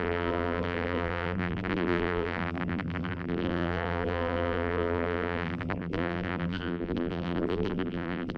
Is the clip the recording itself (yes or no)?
no